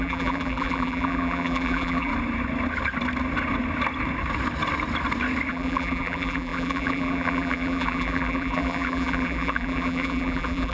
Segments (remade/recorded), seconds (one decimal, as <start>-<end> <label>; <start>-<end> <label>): 0.0-2.1 remade; 2.1-5.5 recorded; 5.5-10.7 remade